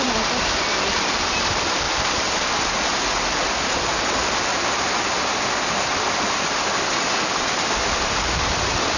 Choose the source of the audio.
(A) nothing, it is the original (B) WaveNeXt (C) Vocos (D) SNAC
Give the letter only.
A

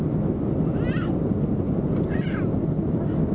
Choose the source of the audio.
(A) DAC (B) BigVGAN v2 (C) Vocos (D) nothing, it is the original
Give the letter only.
D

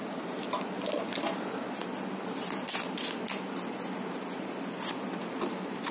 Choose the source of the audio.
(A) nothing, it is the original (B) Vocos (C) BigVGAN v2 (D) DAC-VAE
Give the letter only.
A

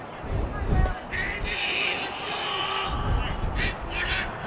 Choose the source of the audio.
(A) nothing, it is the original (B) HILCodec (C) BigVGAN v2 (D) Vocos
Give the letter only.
A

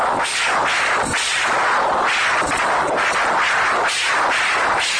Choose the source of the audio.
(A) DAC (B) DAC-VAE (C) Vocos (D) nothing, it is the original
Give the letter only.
D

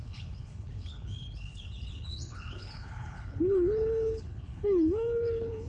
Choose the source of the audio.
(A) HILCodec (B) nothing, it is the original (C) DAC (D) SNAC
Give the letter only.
A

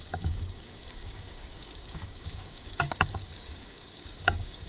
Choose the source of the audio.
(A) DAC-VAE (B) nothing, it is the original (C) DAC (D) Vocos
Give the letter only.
C